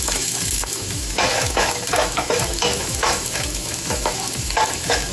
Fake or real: fake